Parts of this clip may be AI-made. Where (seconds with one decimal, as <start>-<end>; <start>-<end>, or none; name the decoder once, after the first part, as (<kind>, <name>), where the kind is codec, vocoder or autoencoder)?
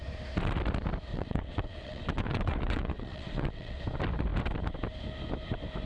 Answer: 1.1-3.8 (vocoder, WaveNeXt)